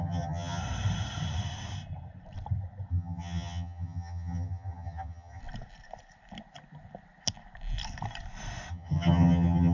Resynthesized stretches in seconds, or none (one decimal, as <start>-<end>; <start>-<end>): 0.0-0.6; 2.9-5.4; 8.7-9.7